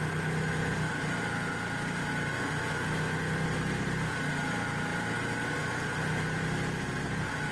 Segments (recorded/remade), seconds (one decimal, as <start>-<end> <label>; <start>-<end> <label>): 0.0-7.5 recorded